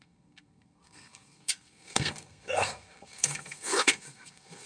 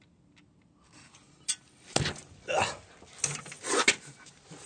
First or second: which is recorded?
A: second